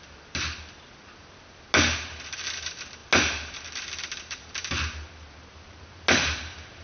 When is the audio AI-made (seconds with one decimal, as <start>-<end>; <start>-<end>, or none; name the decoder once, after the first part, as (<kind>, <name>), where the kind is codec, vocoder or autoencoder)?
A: none